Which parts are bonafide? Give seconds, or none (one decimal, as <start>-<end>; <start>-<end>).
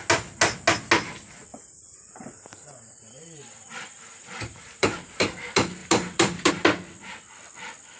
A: 0.0-1.5; 5.2-5.8; 6.5-8.0